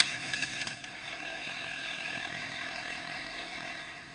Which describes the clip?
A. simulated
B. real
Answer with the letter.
A